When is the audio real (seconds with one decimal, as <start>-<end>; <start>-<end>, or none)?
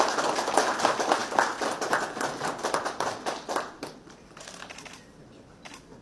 0.0-6.0